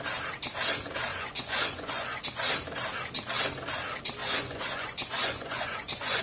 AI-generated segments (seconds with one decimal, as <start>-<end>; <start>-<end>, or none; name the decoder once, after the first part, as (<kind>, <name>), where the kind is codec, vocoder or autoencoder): 1.1-2.2 (vocoder, Vocos); 4.2-6.2